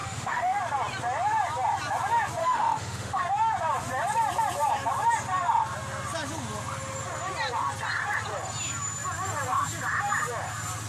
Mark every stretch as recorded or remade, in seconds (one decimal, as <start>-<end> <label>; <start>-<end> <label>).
0.0-0.6 remade; 0.6-2.4 recorded; 2.4-3.2 remade; 3.2-10.9 recorded